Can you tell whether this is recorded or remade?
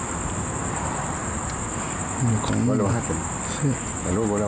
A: recorded